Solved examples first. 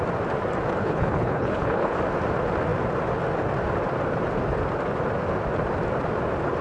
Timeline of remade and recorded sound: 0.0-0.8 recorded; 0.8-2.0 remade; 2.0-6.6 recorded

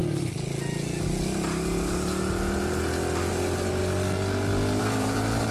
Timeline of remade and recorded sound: 0.0-3.3 recorded; 3.3-3.8 remade; 3.8-4.8 recorded; 4.8-5.5 remade

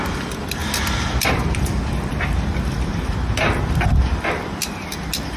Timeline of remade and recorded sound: 0.0-5.4 recorded

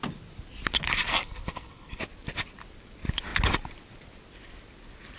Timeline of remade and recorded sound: 0.0-1.1 recorded; 1.1-2.0 remade; 2.0-5.2 recorded

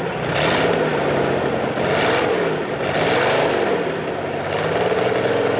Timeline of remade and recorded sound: 0.0-5.6 recorded

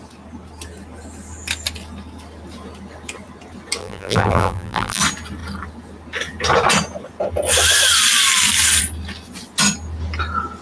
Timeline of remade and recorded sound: 0.0-3.8 recorded; 3.8-5.0 remade; 5.0-10.6 recorded

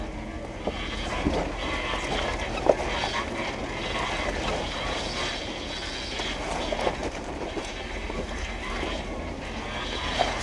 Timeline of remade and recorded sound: 0.0-7.0 recorded; 7.0-9.4 remade; 9.4-10.4 recorded